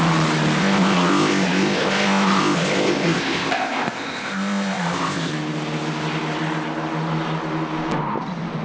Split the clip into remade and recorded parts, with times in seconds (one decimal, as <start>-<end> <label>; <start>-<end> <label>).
0.0-0.6 recorded; 0.6-5.3 remade; 5.3-8.6 recorded